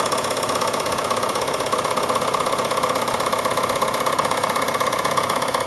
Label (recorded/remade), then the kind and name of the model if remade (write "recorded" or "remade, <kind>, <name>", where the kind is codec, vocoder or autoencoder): remade, vocoder, Vocos